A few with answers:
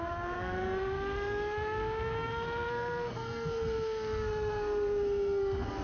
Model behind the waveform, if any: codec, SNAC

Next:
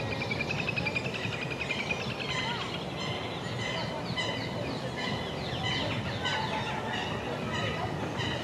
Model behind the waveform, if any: none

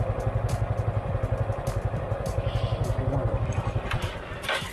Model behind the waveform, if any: none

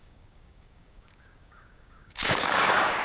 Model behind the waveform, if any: codec, DAC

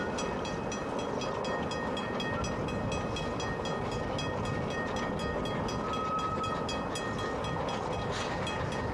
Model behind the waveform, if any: none